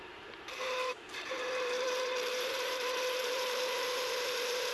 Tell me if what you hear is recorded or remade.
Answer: remade